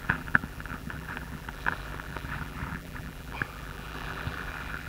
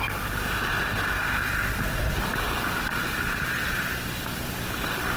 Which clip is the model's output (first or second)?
first